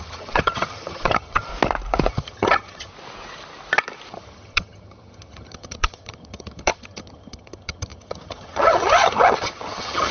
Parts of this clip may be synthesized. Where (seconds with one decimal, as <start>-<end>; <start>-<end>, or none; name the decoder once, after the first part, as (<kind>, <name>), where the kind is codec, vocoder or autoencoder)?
0.0-1.5 (vocoder, HiFi-GAN); 2.1-2.9; 4.1-10.1